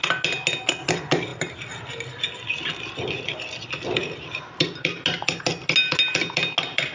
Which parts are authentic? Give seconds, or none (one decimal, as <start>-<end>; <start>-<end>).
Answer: 0.0-6.9